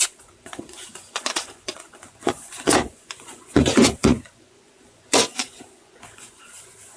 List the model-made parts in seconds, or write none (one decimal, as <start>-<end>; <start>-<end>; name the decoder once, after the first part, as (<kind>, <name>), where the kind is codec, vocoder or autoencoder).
0.0-7.0 (vocoder, Vocos)